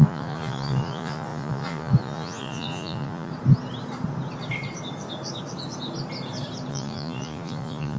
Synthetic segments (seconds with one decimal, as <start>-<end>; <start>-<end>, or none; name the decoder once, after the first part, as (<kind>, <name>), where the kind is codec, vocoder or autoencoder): 0.0-3.3 (vocoder, Vocos); 6.7-8.0

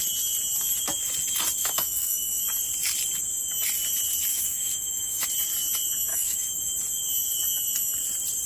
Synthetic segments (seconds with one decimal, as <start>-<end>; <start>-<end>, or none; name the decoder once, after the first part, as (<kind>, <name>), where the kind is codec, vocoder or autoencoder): 1.6-2.4 (autoencoder, DAC-VAE); 4.3-5.3; 6.1-6.7

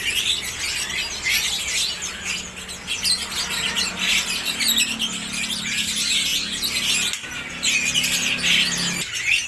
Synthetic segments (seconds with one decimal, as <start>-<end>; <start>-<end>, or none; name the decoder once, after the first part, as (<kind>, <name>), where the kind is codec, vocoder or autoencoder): none

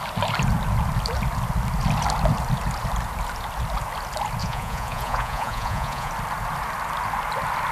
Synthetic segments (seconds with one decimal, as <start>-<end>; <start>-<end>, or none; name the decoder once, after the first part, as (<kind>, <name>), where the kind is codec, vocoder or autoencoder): 4.4-6.1 (vocoder, Vocos)

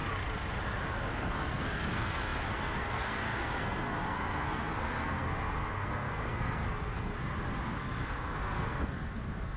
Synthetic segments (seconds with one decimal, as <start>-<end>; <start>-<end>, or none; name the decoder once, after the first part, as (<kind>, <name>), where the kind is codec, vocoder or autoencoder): 1.1-7.1 (codec, SNAC); 7.6-9.6

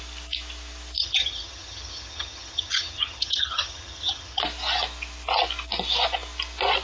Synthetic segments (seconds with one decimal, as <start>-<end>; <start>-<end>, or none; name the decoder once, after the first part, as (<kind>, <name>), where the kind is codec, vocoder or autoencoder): 1.0-4.4 (vocoder, HiFi-GAN)

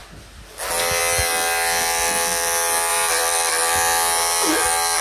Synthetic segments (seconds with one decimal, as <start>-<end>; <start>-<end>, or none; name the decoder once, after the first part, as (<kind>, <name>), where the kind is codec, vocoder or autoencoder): 2.9-3.5 (vocoder, BigVGAN v2)